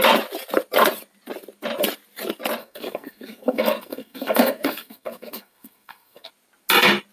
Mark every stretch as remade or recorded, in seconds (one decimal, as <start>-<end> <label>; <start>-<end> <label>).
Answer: 0.0-2.6 recorded; 2.6-6.3 remade; 6.3-7.1 recorded